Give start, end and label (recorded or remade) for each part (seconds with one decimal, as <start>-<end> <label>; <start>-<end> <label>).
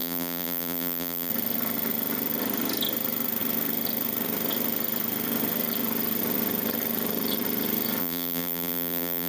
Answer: 0.0-1.3 remade; 1.3-8.0 recorded; 8.0-9.3 remade